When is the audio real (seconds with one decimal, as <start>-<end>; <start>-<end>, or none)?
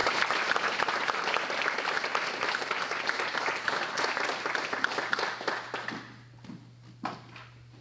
0.0-7.8